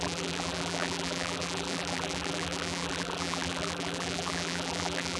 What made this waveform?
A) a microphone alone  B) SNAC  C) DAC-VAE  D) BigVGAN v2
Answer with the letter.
D